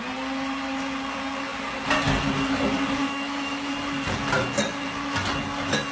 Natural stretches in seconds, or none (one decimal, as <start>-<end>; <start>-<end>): 0.0-3.0; 3.7-5.9